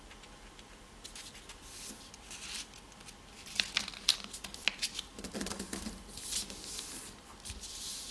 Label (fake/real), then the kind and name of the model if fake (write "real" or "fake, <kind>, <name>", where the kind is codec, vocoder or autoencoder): real